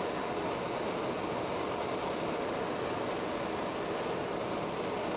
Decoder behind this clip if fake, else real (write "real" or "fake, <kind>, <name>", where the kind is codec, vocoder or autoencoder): real